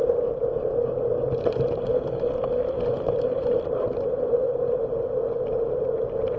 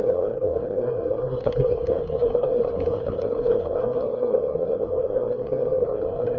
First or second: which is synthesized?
second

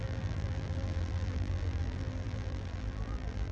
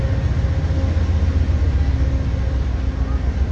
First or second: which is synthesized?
first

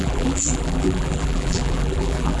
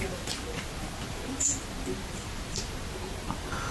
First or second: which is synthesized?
first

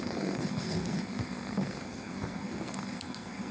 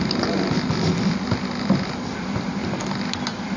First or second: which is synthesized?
first